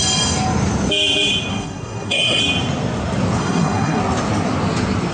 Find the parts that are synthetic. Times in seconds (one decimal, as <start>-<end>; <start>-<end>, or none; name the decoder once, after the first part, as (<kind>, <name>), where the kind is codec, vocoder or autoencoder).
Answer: 1.5-2.4 (codec, SNAC); 3.4-4.0